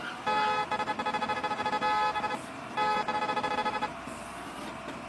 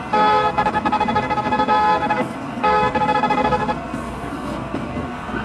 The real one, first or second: first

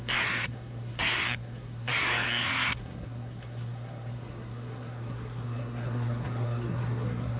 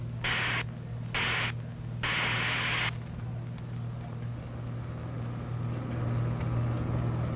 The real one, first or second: second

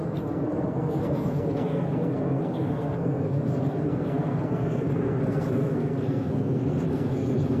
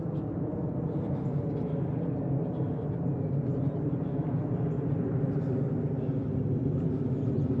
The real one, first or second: second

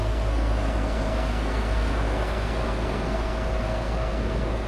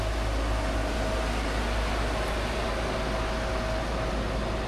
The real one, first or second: second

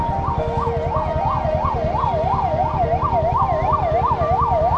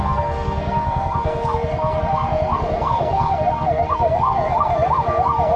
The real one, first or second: first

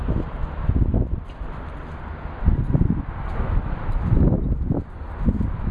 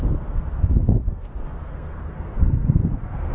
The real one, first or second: first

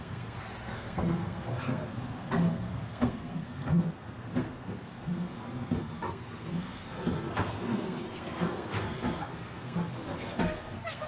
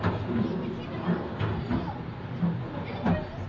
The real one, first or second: second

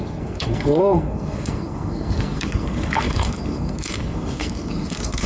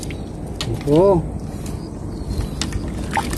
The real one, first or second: second